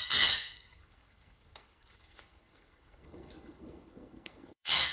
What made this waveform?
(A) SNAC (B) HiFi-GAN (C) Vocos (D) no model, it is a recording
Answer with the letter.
A